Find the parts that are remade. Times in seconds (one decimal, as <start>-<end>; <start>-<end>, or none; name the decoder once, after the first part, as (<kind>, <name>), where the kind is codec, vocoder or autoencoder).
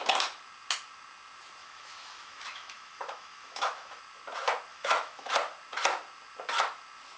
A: 1.6-4.0 (autoencoder, DAC-VAE); 4.7-5.3